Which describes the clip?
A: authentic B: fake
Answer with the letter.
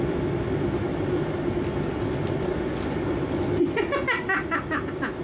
A